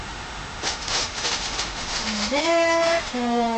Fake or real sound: fake